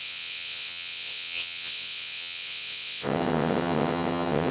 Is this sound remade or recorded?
remade